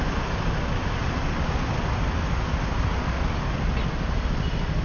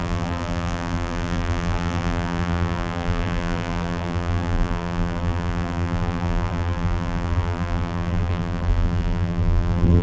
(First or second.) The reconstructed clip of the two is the second